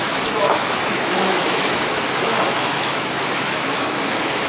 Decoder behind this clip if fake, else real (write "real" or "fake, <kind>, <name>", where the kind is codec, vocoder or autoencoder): fake, autoencoder, DAC-VAE